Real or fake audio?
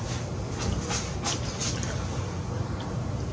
real